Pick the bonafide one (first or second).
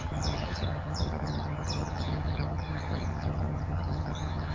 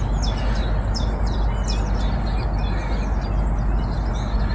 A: second